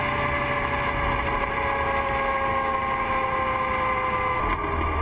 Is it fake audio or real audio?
real